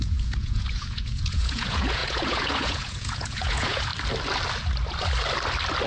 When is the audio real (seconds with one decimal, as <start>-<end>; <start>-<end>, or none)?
3.9-5.9